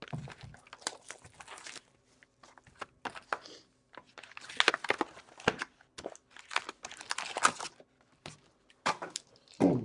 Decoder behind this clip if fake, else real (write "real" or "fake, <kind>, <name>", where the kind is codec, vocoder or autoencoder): real